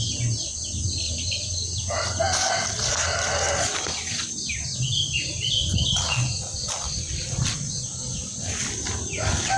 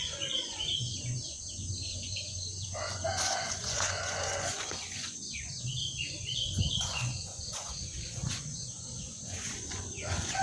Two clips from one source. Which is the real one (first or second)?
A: first